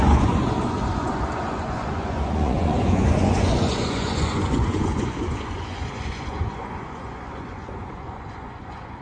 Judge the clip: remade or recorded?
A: remade